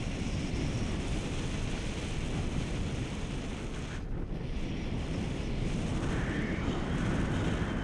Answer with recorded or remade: recorded